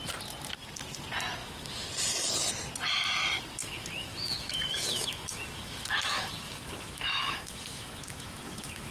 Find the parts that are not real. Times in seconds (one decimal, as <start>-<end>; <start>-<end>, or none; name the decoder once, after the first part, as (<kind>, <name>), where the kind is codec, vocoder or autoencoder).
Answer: 1.4-1.9 (autoencoder, DAC-VAE); 3.6-8.9